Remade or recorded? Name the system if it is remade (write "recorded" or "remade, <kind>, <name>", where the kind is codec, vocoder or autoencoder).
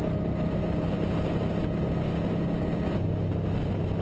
recorded